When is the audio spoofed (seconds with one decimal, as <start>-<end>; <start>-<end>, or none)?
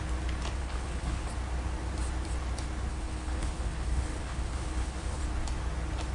0.6-1.3; 2.9-5.2